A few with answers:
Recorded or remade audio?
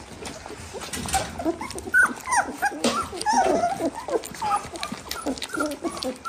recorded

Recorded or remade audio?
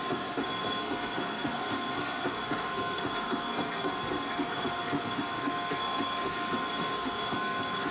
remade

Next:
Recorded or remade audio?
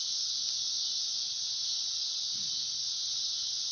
recorded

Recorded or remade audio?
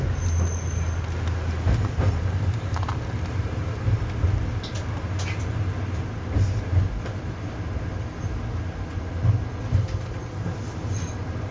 recorded